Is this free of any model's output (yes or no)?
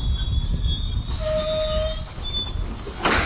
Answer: yes